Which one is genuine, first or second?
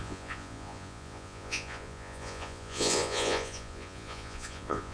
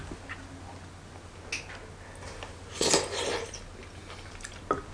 second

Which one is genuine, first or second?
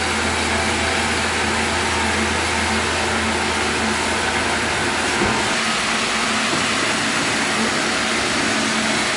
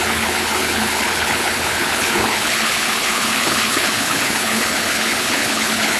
first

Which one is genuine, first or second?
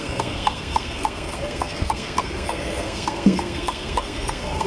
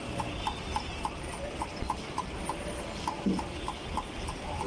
second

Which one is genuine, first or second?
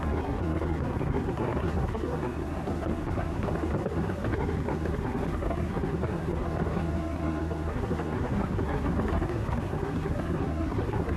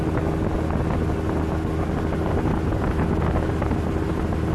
second